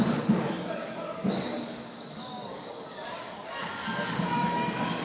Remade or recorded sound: remade